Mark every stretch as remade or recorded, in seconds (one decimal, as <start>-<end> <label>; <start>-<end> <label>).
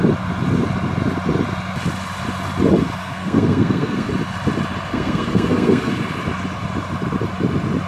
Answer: 0.0-3.0 recorded; 3.0-4.1 remade; 4.1-4.9 recorded; 4.9-5.9 remade; 5.9-7.9 recorded